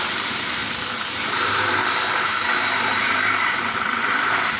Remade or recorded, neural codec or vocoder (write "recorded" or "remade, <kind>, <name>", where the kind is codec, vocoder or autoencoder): remade, vocoder, BigVGAN v2